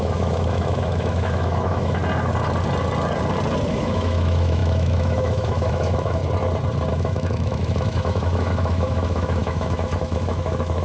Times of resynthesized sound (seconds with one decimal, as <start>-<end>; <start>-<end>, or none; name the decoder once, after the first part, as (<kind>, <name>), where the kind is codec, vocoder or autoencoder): 0.0-2.0 (autoencoder, DAC-VAE); 3.7-6.2; 6.9-10.8